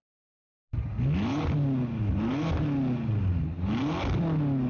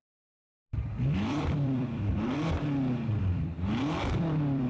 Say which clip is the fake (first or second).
second